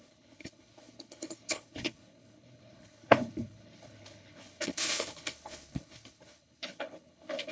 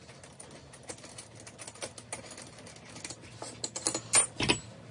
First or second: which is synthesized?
first